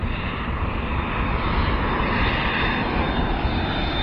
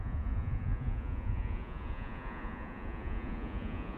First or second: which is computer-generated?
second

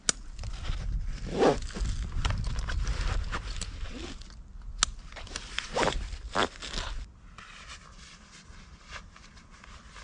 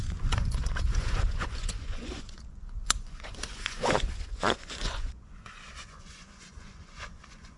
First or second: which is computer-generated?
second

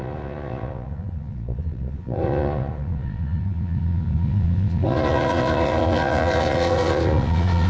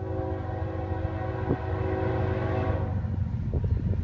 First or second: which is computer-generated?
first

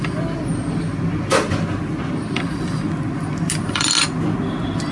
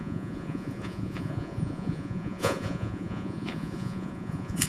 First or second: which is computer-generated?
second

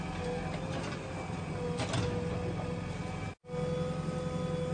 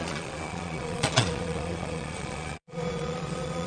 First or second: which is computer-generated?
second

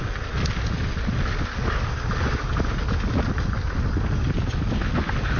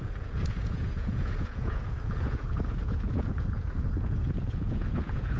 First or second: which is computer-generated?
second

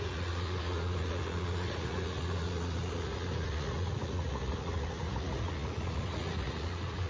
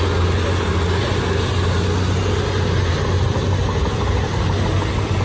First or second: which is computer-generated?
first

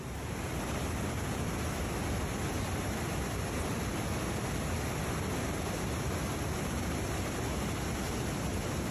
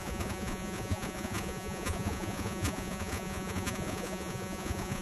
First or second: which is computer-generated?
second